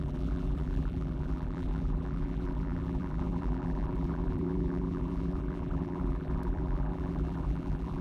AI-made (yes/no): yes